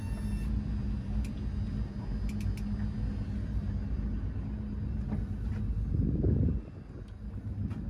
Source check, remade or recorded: recorded